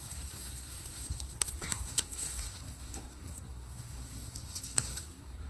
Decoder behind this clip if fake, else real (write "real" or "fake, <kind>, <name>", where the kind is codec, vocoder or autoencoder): fake, codec, SNAC